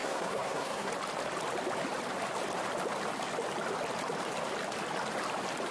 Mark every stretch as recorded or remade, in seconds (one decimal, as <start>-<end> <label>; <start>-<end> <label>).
0.0-0.9 remade; 0.9-5.7 recorded